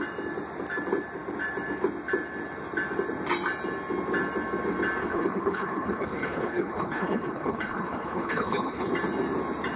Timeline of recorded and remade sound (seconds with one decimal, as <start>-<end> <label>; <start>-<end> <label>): 0.0-5.0 recorded; 5.0-8.9 remade; 8.9-9.8 recorded